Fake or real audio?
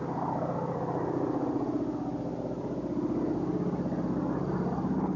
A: real